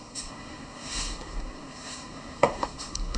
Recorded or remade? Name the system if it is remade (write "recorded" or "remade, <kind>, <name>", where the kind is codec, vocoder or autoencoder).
remade, codec, SNAC